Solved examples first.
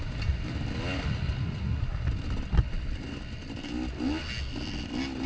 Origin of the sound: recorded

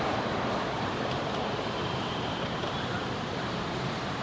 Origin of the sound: remade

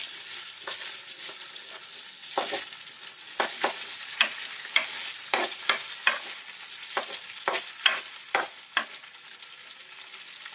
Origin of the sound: recorded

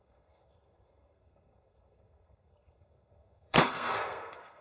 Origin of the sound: remade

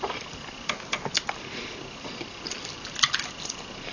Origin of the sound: recorded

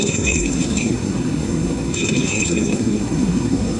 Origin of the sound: remade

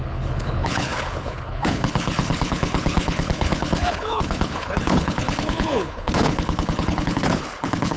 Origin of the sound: remade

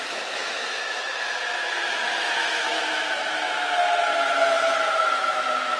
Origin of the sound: remade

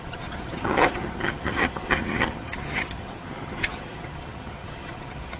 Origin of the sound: remade